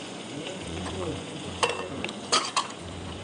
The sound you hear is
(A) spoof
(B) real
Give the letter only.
A